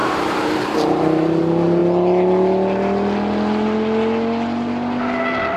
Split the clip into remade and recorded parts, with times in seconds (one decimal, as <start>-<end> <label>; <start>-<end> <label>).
0.0-1.4 remade; 1.4-5.6 recorded